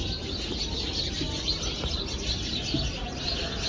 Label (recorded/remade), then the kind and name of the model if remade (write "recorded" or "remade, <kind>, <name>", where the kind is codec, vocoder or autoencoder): recorded